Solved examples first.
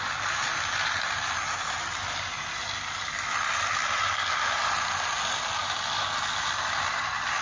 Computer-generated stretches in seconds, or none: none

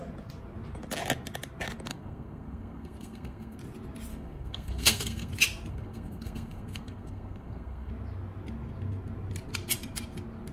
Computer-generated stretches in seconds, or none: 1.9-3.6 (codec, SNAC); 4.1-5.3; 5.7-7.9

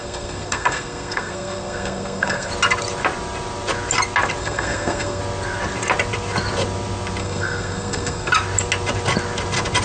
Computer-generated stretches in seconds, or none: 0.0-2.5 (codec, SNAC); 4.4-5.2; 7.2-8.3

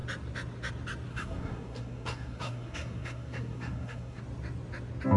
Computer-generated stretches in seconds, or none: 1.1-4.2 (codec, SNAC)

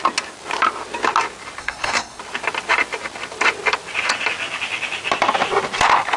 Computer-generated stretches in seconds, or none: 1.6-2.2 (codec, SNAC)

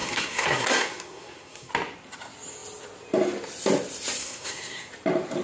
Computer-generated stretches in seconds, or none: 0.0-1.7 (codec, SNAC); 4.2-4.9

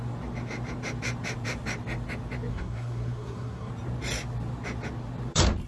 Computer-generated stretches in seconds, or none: 2.5-3.7 (codec, SNAC)

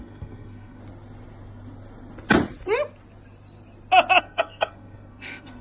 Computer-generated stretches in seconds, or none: 0.0-0.8 (codec, SNAC); 4.2-5.6